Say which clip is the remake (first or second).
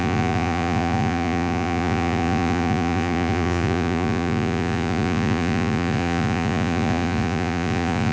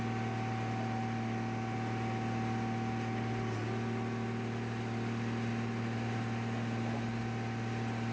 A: first